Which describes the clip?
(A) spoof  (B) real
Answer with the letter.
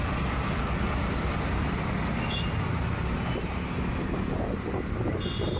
B